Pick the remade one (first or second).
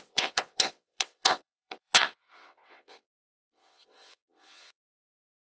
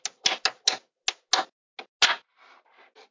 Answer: first